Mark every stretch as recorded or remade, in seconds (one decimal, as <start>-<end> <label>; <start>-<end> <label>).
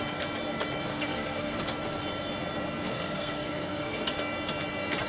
0.0-0.9 recorded; 0.9-1.6 remade; 1.6-2.9 recorded; 2.9-4.0 remade; 4.0-5.1 recorded